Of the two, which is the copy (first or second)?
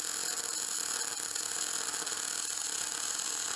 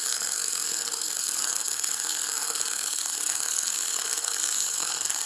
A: second